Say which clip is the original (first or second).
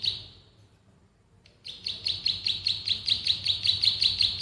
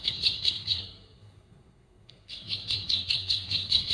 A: first